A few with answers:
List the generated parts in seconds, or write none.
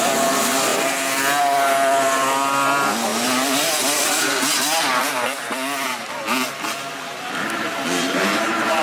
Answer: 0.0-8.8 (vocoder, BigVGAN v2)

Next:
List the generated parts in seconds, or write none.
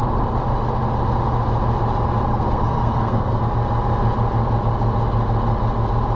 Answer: 2.3-3.4 (codec, SNAC)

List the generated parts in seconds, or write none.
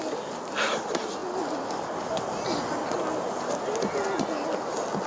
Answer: none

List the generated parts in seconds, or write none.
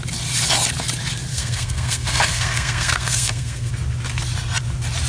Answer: 1.3-3.7 (codec, SNAC)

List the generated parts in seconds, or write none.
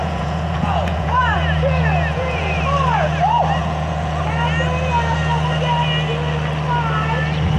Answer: 0.0-2.6 (vocoder, Vocos); 3.6-4.2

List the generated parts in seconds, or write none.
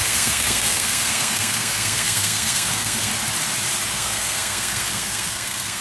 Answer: 0.0-3.1 (codec, SNAC); 3.9-5.8